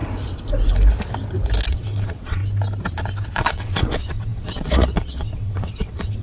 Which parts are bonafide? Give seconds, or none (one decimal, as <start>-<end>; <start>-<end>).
0.0-1.7; 2.4-3.3